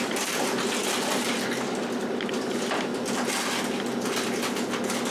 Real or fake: real